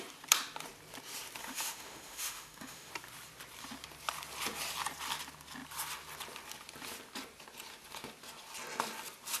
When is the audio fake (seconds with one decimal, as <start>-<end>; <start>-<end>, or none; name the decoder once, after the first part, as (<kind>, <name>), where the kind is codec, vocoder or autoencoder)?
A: 1.4-2.9 (autoencoder, DAC-VAE)